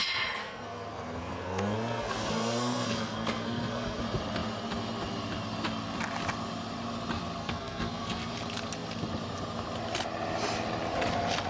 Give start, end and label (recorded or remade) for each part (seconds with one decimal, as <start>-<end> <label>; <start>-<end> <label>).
0.0-0.4 recorded; 0.4-4.0 remade; 4.0-7.4 recorded; 7.4-8.3 remade; 8.3-11.5 recorded